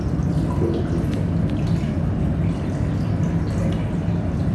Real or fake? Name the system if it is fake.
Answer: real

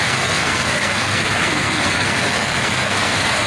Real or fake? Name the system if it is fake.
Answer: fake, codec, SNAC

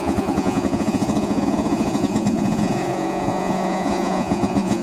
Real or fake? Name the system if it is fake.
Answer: fake, vocoder, Vocos